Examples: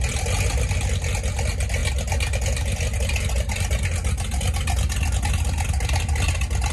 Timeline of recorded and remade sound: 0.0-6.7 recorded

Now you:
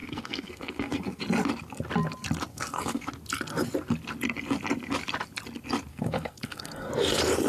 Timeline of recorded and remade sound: 0.0-1.2 remade; 1.2-2.5 recorded; 2.5-3.1 remade; 3.1-5.9 recorded; 5.9-6.9 remade; 6.9-7.5 recorded

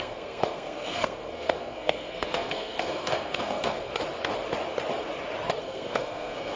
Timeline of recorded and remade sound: 0.0-3.9 remade; 3.9-5.6 recorded; 5.6-6.6 remade

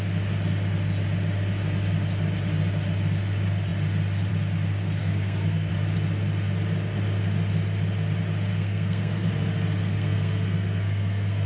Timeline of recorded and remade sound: 0.0-5.0 recorded; 5.0-5.7 remade; 5.7-8.5 recorded; 8.5-9.3 remade; 9.3-9.8 recorded; 9.8-11.5 remade

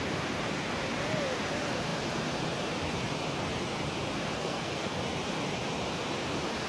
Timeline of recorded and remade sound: 0.0-4.4 recorded; 4.4-5.0 remade; 5.0-6.7 recorded

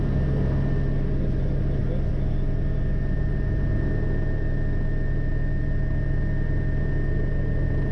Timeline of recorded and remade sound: 0.0-7.9 recorded

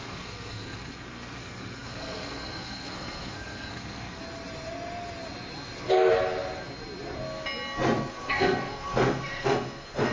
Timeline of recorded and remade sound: 0.0-4.2 remade; 4.2-8.1 recorded; 8.1-10.1 remade